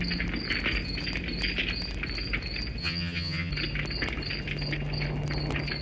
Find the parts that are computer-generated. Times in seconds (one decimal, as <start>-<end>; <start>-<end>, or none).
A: 2.8-3.5